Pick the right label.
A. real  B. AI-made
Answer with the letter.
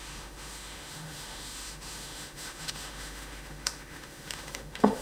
B